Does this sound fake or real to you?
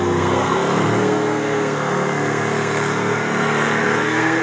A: fake